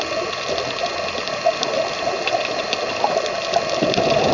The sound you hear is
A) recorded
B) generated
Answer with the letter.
A